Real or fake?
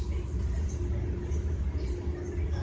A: real